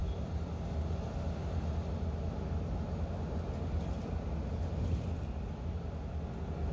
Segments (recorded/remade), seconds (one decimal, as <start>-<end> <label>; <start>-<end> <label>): 0.0-6.7 recorded